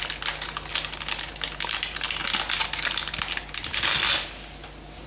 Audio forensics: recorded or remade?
recorded